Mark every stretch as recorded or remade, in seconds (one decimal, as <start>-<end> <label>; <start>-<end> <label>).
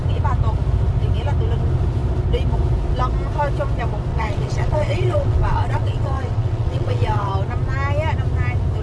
0.0-4.1 recorded; 4.1-7.3 remade; 7.3-8.8 recorded